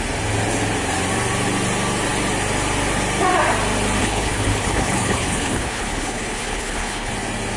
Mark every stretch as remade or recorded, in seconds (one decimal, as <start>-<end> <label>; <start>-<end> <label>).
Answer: 0.0-4.0 recorded; 4.0-7.1 remade; 7.1-7.6 recorded